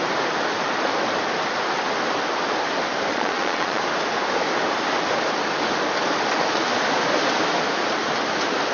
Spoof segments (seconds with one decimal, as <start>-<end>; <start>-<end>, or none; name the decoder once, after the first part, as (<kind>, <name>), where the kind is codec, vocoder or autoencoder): 3.1-3.8 (vocoder, Vocos)